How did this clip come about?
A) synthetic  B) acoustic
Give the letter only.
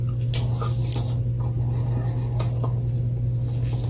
B